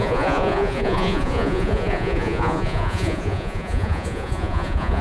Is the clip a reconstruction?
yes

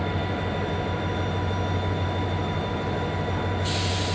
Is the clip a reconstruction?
no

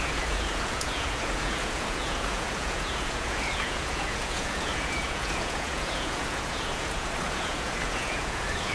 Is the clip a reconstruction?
yes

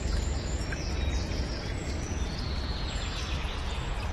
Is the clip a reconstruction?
yes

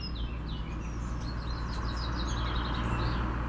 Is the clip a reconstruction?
no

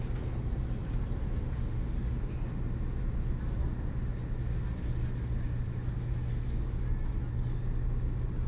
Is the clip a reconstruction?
no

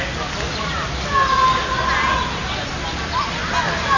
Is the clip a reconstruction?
no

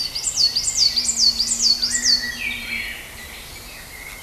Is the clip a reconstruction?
no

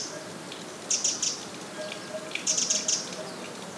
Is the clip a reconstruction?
no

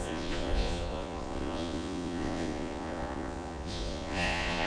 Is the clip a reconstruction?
yes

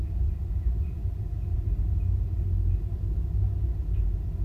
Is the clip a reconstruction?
no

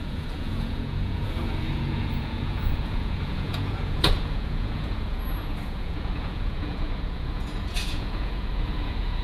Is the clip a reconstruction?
yes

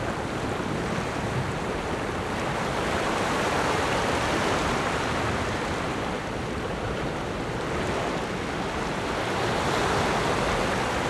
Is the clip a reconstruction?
no